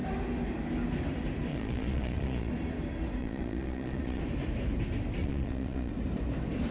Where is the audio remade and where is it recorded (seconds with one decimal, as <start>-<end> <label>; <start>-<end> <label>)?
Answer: 0.0-1.5 recorded; 1.5-2.5 remade; 2.5-3.2 recorded; 3.2-4.2 remade; 4.2-5.2 recorded; 5.2-5.9 remade; 5.9-6.7 recorded